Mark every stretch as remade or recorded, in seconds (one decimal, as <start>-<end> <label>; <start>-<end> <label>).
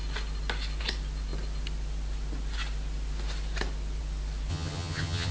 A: 0.0-4.5 recorded; 4.5-5.3 remade